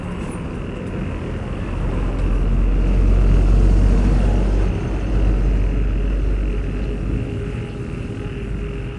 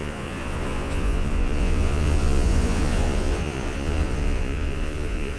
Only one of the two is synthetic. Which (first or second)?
second